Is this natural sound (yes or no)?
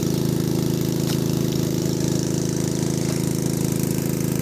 no